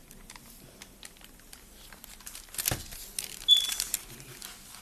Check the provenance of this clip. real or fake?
real